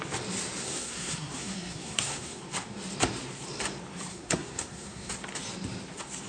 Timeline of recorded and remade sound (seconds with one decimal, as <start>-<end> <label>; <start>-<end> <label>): 0.0-0.6 recorded; 0.6-2.4 remade; 2.4-4.1 recorded; 4.1-5.1 remade; 5.1-6.3 recorded

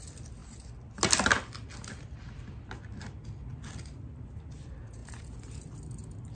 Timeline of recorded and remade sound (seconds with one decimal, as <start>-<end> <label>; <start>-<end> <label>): 0.0-6.3 recorded

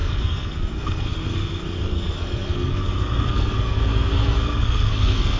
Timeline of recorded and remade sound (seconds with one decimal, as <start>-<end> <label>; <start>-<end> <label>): 0.0-5.4 remade

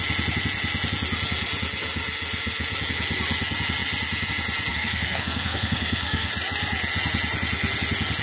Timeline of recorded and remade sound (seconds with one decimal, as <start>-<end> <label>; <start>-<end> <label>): 0.0-4.7 recorded; 4.7-6.3 remade; 6.3-8.2 recorded